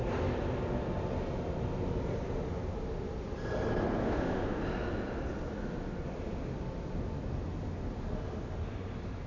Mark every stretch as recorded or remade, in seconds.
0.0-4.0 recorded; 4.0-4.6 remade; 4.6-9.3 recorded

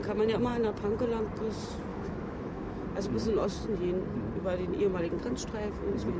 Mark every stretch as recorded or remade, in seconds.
0.0-1.9 recorded; 1.9-2.8 remade; 2.8-6.2 recorded

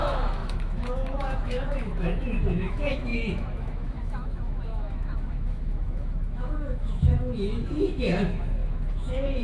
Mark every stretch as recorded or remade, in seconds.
0.0-9.4 remade

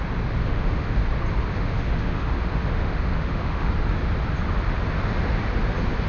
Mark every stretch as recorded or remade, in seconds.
0.0-0.4 recorded; 0.4-1.0 remade; 1.0-1.5 recorded; 1.5-3.7 remade; 3.7-6.1 recorded

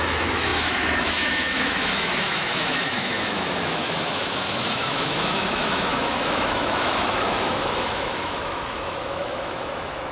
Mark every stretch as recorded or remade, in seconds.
0.0-10.1 remade

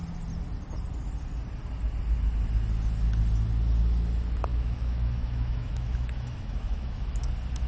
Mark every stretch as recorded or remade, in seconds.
0.0-4.5 recorded; 4.5-7.3 remade; 7.3-7.7 recorded

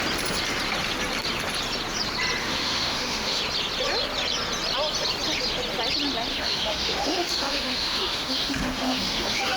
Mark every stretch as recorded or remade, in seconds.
0.0-2.4 recorded; 2.4-3.4 remade; 3.4-6.3 recorded; 6.3-9.6 remade

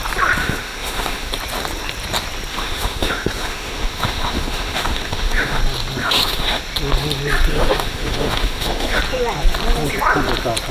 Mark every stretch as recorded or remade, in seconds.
0.0-0.4 recorded; 0.4-1.3 remade; 1.3-2.5 recorded; 2.5-5.6 remade; 5.6-6.0 recorded; 6.0-6.6 remade; 6.6-7.5 recorded; 7.5-9.0 remade; 9.0-10.7 recorded